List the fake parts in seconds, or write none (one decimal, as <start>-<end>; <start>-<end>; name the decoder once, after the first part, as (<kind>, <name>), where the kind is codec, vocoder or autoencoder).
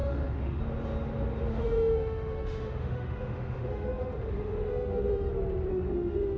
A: 0.0-0.6 (autoencoder, DAC-VAE); 1.5-5.3; 5.7-6.4